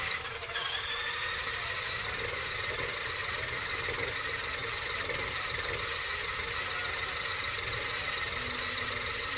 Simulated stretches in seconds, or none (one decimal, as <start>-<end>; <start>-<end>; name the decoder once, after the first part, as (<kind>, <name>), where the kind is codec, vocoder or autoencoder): none